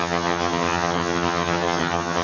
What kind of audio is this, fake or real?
fake